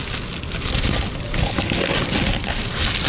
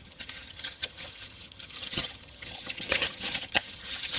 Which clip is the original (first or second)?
first